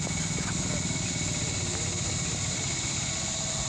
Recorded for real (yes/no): yes